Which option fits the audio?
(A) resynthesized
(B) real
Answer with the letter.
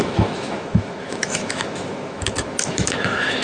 A